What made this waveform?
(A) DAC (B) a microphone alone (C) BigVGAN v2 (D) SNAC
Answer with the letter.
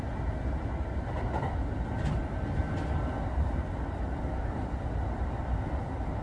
B